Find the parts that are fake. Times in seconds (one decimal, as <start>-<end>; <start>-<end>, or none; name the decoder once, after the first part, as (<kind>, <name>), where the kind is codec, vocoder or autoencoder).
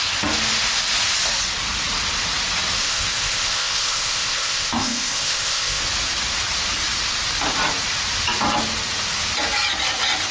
2.8-5.8 (codec, ZipCodec)